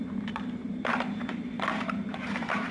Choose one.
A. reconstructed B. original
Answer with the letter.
A